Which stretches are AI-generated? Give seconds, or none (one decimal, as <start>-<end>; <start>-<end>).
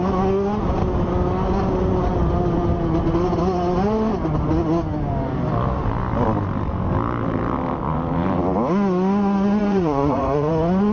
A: 9.6-10.5